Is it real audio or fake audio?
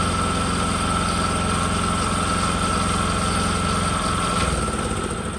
real